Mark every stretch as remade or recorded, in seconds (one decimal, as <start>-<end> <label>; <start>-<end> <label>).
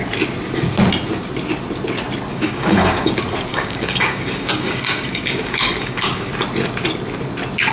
0.0-2.3 recorded; 2.3-3.1 remade; 3.1-3.5 recorded; 3.5-6.3 remade; 6.3-7.7 recorded